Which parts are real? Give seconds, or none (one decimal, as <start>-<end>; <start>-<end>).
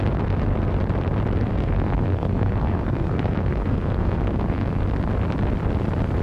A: 0.0-1.5; 4.8-6.2